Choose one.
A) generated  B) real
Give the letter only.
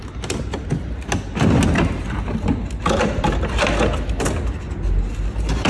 B